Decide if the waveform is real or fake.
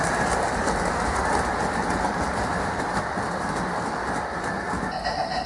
real